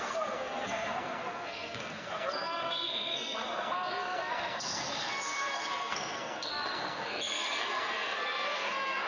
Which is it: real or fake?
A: fake